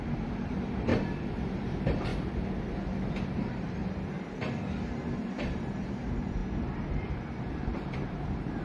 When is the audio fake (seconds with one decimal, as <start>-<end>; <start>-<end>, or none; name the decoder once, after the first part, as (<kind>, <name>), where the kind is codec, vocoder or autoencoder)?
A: 0.0-0.9 (vocoder, BigVGAN v2); 1.5-2.1; 3.3-3.8; 5.1-6.4; 7.4-8.6